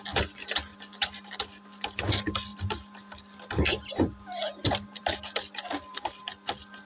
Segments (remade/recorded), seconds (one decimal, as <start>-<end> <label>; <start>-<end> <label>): 0.0-0.7 recorded; 0.7-1.3 remade; 1.3-2.5 recorded; 2.5-5.0 remade; 5.0-6.9 recorded